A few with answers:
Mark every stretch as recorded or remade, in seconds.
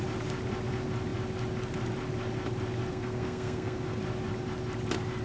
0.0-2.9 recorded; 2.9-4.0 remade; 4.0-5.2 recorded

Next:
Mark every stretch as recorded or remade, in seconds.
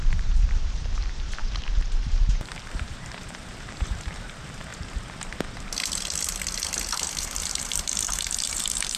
0.0-4.7 remade; 4.7-7.2 recorded; 7.2-9.0 remade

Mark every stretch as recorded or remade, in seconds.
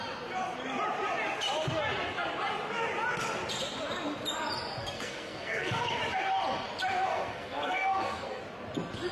0.0-4.8 recorded; 4.8-6.0 remade; 6.0-7.1 recorded; 7.1-8.4 remade; 8.4-9.1 recorded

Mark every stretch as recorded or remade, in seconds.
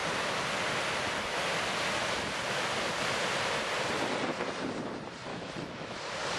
0.0-5.3 recorded; 5.3-6.0 remade; 6.0-6.4 recorded